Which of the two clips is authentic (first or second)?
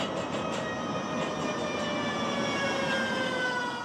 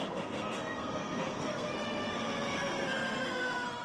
first